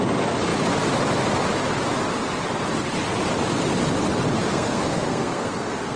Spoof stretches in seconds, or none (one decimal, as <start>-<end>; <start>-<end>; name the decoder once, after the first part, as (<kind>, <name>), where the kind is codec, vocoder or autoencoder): 4.5-6.0 (codec, SNAC)